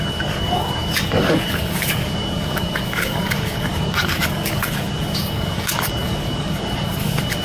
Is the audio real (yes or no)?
no